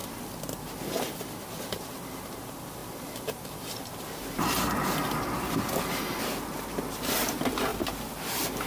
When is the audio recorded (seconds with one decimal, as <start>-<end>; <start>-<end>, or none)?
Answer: 0.0-2.8; 4.0-7.7